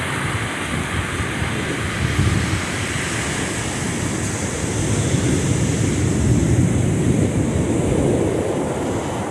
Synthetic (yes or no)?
no